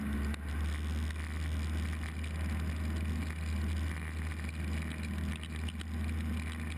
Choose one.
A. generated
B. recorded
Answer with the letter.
B